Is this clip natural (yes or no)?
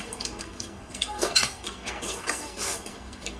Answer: no